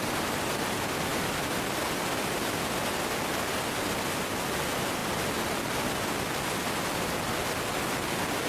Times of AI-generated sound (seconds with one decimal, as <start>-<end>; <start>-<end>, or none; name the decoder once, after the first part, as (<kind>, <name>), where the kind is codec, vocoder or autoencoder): none